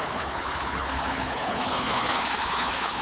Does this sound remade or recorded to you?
remade